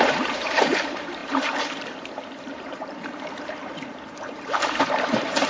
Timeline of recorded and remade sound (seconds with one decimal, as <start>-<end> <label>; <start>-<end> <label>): 0.0-5.5 remade